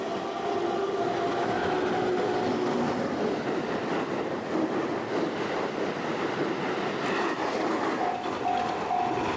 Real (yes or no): yes